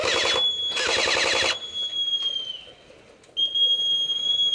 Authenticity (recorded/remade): recorded